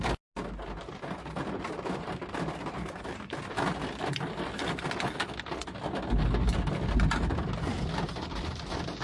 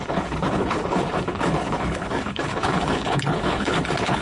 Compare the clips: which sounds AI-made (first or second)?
second